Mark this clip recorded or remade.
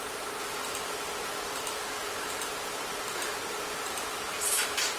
remade